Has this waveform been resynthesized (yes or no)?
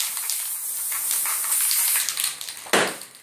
no